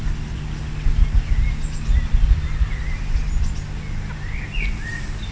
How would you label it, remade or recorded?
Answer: recorded